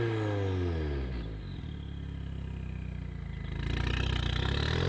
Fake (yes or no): no